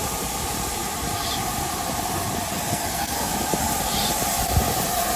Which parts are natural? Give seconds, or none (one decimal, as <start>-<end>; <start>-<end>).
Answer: 0.0-2.5; 3.3-5.2